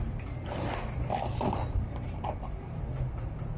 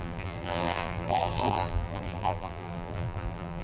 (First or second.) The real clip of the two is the first